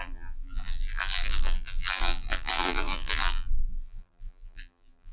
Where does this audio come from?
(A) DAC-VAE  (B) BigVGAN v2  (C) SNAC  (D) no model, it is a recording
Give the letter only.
B